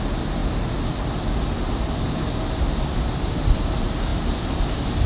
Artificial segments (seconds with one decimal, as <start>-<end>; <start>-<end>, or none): none